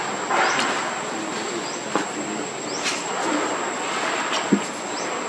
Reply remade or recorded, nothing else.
recorded